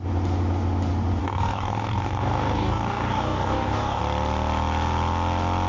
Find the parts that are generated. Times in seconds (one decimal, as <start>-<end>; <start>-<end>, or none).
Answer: 1.2-4.0